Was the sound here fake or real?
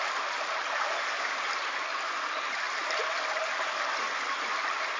real